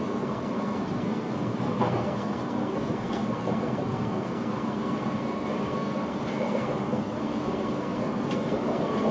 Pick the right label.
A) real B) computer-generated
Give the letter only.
B